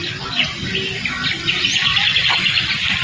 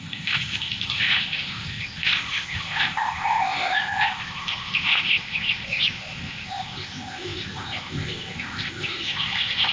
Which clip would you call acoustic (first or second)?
first